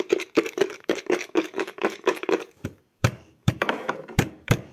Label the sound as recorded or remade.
remade